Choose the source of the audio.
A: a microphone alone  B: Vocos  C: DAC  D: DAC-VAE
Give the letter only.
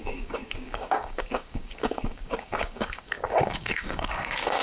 C